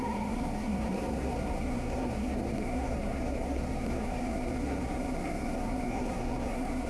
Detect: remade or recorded remade